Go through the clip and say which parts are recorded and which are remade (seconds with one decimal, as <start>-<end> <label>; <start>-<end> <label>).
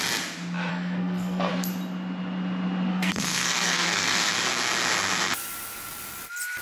0.0-0.7 recorded; 0.7-1.5 remade; 1.5-2.9 recorded; 2.9-4.3 remade; 4.3-6.6 recorded